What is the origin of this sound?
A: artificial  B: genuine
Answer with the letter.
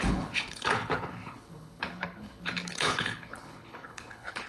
A